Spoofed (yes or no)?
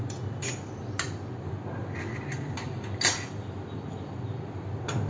no